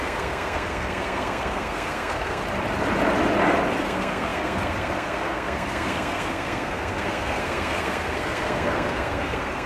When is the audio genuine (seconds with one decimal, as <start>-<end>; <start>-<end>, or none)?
2.4-3.8